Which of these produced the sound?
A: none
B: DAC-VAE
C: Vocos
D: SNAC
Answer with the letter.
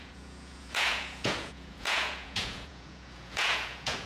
C